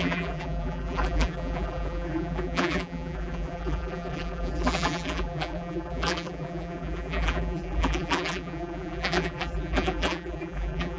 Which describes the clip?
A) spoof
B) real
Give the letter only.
A